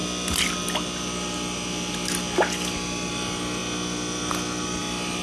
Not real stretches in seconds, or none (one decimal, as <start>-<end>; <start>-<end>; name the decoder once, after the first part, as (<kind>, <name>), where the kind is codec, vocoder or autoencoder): none